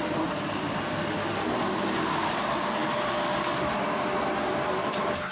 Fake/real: real